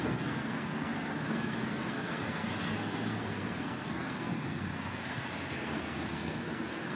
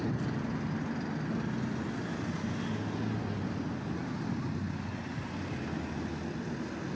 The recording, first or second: second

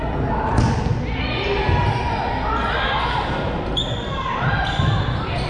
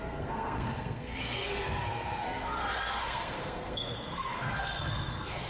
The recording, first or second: first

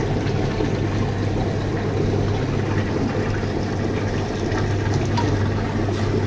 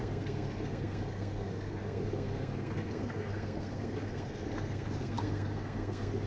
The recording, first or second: first